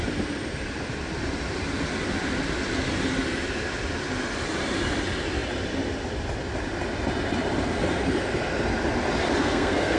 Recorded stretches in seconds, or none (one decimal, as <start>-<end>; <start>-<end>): 0.0-9.4